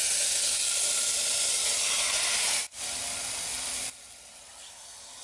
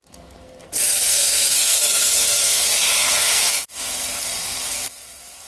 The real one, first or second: first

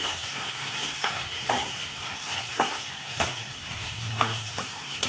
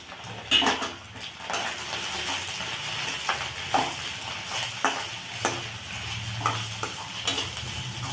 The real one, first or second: second